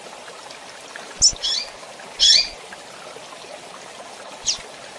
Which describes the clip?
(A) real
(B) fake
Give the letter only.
A